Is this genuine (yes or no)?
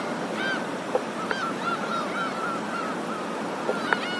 yes